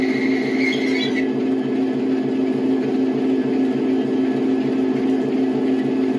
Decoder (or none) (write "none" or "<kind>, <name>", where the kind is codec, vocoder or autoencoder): none